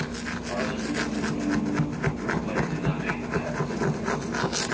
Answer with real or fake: real